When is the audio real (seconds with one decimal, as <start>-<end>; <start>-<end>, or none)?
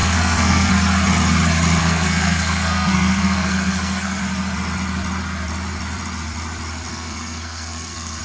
0.7-1.8; 4.2-6.9